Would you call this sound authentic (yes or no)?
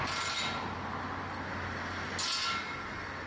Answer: yes